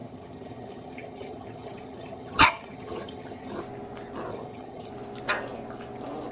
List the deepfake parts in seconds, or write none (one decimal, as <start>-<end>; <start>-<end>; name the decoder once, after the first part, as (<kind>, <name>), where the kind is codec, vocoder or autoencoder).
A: 0.0-3.6 (vocoder, HiFi-GAN); 4.3-4.9